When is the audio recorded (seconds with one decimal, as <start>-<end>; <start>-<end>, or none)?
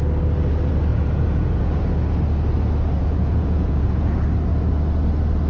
0.0-0.9; 1.8-3.0; 4.0-5.5